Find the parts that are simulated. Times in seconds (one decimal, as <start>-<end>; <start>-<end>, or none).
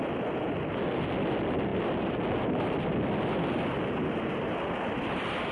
none